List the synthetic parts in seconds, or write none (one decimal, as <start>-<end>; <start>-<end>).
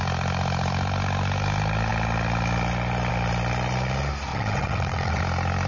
4.3-5.2